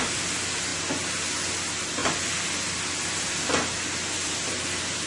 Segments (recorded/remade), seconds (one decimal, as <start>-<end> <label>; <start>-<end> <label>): 0.0-5.1 recorded